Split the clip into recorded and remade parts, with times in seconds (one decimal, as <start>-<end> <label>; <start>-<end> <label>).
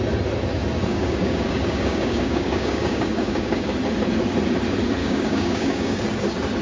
0.0-0.9 recorded; 0.9-3.7 remade; 3.7-5.0 recorded; 5.0-6.0 remade; 6.0-6.6 recorded